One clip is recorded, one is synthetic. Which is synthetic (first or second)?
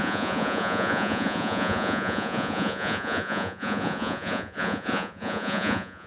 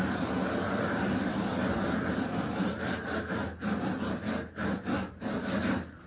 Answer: first